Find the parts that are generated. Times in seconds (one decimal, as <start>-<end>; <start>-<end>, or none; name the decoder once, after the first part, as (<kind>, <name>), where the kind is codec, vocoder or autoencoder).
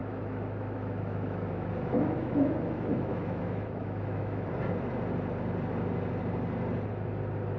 0.0-4.5 (autoencoder, DAC-VAE)